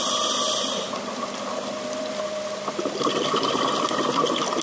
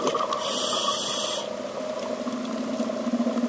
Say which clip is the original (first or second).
second